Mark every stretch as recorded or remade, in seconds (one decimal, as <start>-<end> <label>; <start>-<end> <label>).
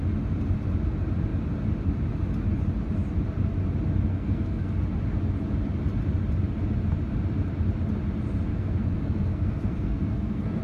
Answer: 0.0-4.1 recorded; 4.1-4.7 remade; 4.7-8.5 recorded; 8.5-10.6 remade